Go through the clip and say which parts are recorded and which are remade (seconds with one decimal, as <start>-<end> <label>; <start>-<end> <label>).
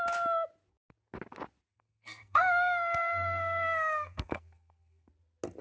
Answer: 0.0-1.7 recorded; 1.7-5.1 remade; 5.1-5.6 recorded